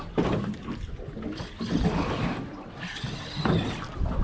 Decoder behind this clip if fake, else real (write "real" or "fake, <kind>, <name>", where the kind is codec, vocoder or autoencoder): real